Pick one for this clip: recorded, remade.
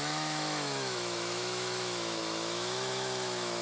remade